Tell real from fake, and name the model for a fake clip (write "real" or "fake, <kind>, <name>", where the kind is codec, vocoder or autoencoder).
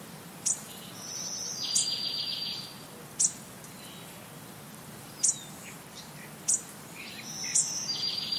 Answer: real